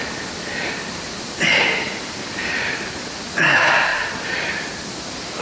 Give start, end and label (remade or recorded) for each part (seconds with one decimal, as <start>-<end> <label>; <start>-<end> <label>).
0.0-2.2 recorded; 2.2-3.2 remade; 3.2-3.9 recorded; 3.9-4.5 remade; 4.5-5.4 recorded

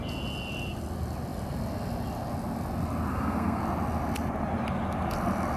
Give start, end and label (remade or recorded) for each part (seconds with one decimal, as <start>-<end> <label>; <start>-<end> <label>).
0.0-3.1 recorded; 3.1-3.6 remade; 3.6-5.6 recorded

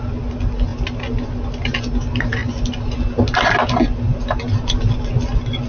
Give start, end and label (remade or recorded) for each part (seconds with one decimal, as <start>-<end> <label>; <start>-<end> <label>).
0.0-5.7 recorded

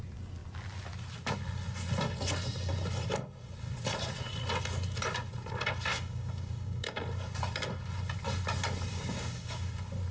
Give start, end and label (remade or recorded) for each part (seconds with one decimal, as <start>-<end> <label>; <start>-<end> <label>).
0.0-5.9 recorded; 5.9-7.0 remade; 7.0-8.9 recorded; 8.9-9.7 remade; 9.7-10.1 recorded

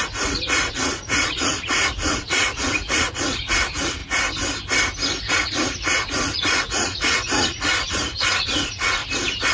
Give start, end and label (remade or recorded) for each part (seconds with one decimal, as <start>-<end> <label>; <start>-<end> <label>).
0.0-4.0 remade; 4.0-5.3 recorded; 5.3-9.0 remade; 9.0-9.5 recorded

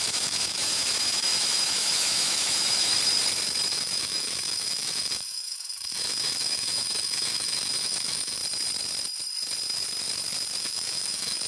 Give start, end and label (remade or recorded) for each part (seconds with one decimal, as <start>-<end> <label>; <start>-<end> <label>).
0.0-2.9 remade; 2.9-3.7 recorded; 3.7-8.4 remade; 8.4-10.6 recorded; 10.6-11.5 remade

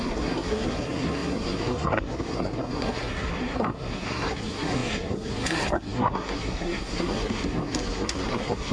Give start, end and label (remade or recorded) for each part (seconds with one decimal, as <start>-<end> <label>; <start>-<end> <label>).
0.0-8.7 remade